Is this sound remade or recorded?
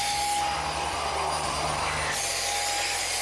recorded